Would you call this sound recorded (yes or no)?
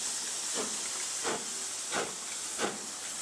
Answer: yes